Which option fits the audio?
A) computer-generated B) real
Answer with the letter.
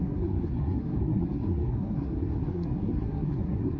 A